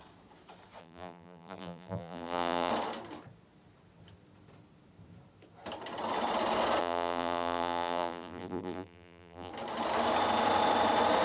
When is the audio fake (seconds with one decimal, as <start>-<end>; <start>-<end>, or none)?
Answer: 0.8-2.7; 6.8-9.5